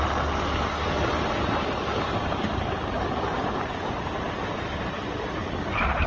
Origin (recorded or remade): recorded